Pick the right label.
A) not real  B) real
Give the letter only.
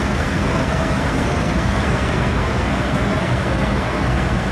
A